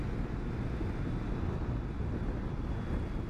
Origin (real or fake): real